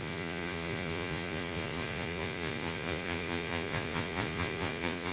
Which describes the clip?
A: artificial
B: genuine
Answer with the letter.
A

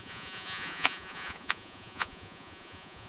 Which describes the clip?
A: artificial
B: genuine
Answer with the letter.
A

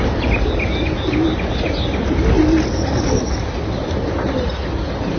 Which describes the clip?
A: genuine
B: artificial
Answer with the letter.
A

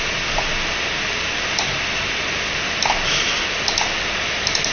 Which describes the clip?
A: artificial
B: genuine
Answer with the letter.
B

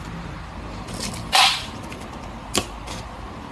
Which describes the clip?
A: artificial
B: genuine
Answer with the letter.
B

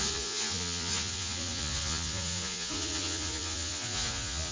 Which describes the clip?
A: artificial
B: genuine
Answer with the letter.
A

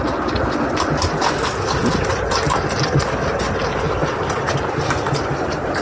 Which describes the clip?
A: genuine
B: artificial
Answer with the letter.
A